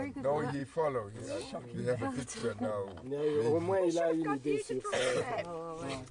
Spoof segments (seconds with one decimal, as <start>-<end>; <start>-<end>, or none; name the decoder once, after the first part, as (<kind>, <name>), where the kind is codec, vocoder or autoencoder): none